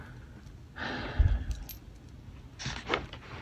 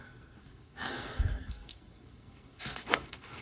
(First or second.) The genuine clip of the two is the first